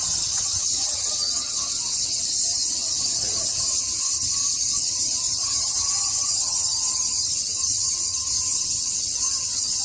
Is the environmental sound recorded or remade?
remade